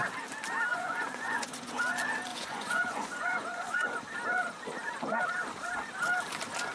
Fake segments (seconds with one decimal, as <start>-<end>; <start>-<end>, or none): 0.7-1.8; 2.3-4.0